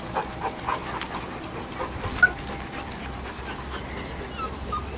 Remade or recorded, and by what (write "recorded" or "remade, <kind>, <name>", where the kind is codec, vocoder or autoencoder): recorded